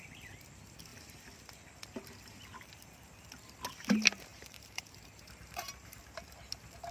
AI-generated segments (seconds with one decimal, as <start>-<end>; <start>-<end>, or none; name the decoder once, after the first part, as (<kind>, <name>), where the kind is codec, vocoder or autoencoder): 4.3-6.0 (vocoder, BigVGAN v2)